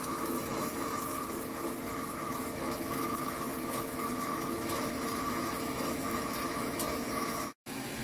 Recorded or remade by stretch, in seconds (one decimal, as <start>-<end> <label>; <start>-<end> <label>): 0.0-8.0 remade